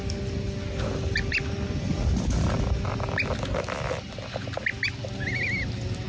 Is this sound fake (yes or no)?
no